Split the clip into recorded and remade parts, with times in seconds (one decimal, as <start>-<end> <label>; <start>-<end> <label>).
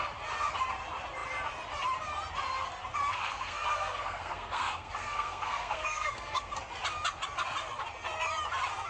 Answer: 0.0-3.1 recorded; 3.1-6.5 remade; 6.5-8.9 recorded